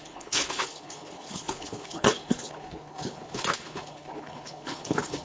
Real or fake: fake